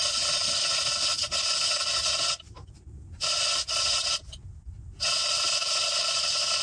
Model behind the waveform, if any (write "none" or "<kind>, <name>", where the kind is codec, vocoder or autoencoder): none